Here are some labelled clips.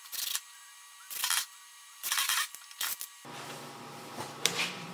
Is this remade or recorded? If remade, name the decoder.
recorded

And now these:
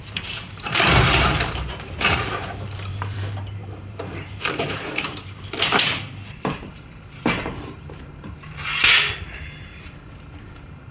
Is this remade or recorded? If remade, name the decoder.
remade, vocoder, BigVGAN v2